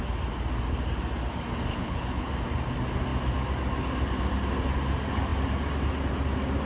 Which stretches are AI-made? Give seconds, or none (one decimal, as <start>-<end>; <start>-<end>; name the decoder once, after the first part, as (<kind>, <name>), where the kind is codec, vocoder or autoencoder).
1.7-2.3 (codec, HILCodec)